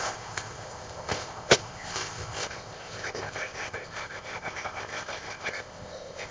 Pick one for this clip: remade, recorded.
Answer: remade